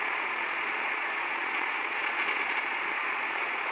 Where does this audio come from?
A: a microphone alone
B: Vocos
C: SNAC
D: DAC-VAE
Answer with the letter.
B